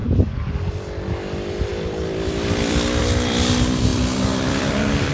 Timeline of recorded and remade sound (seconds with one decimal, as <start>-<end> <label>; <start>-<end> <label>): 0.0-0.7 recorded; 0.7-5.1 remade